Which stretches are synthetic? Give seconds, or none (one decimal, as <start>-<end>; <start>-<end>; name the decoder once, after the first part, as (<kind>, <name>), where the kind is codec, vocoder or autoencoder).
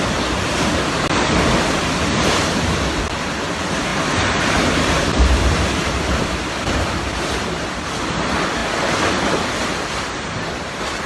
3.9-7.2 (vocoder, BigVGAN v2)